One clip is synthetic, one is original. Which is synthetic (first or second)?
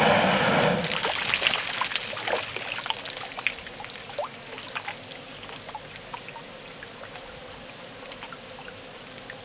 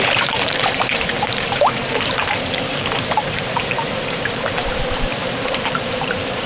second